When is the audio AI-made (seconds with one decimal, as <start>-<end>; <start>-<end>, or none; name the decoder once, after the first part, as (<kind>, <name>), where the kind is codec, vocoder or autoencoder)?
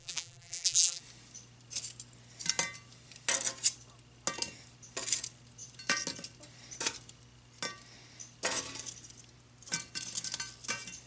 0.0-1.0 (vocoder, BigVGAN v2)